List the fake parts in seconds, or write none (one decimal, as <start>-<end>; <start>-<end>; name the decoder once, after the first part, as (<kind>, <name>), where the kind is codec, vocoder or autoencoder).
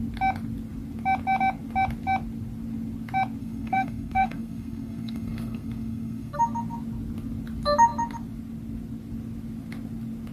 3.4-6.4 (codec, SNAC)